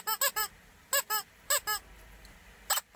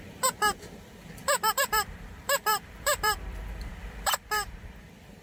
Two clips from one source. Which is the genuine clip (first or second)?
first